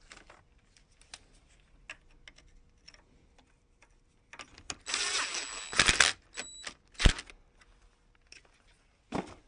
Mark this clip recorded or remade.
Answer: recorded